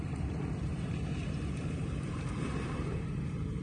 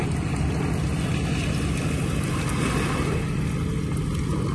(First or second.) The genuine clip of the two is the second